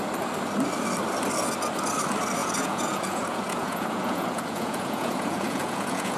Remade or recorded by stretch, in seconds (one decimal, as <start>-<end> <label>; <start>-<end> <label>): 0.0-2.4 recorded; 2.4-6.2 remade